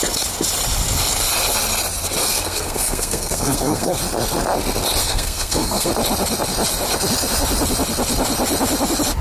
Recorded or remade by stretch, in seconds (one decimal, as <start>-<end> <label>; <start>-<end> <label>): 0.0-2.2 recorded; 2.2-4.0 remade; 4.0-5.0 recorded; 5.0-5.9 remade; 5.9-9.2 recorded